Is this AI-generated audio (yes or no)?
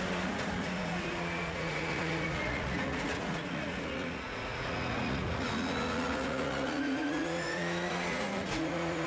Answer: yes